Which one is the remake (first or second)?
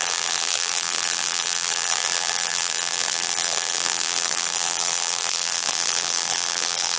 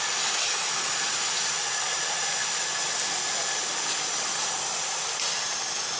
first